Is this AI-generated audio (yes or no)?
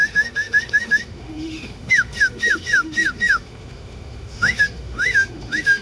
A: yes